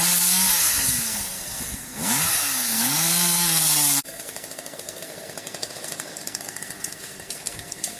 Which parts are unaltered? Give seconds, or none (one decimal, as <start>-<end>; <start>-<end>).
none